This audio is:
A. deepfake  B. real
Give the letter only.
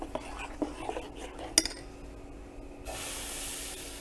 B